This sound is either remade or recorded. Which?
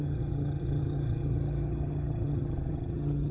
remade